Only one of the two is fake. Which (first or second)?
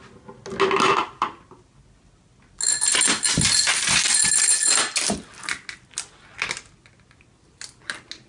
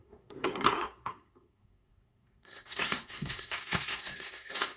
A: second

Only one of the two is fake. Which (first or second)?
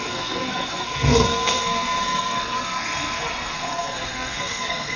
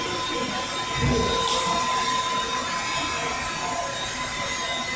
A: first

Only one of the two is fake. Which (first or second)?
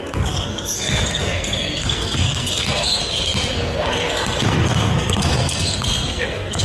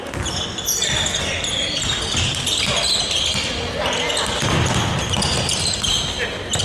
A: first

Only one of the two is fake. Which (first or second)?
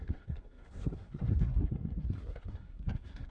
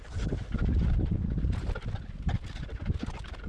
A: first